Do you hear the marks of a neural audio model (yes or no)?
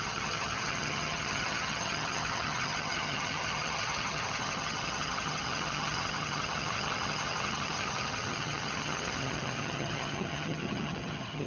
yes